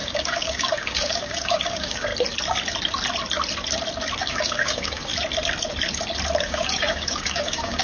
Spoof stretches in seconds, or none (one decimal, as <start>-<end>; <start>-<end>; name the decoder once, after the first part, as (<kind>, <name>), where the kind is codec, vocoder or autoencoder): 0.0-2.1 (codec, DAC); 4.2-5.1; 6.4-7.8